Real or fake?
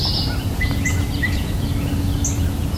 real